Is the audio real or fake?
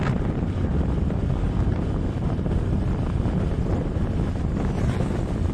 real